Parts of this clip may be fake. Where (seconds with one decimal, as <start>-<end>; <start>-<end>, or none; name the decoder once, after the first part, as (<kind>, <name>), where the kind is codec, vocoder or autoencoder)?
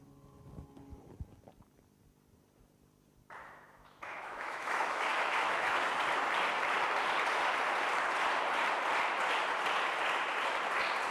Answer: 3.4-5.9 (autoencoder, DAC-VAE)